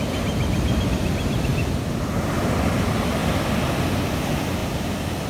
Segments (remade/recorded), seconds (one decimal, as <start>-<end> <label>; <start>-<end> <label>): 0.0-1.5 recorded; 1.5-2.1 remade; 2.1-3.2 recorded; 3.2-3.8 remade; 3.8-5.3 recorded